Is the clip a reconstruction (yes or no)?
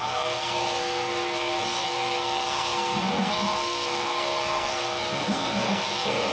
yes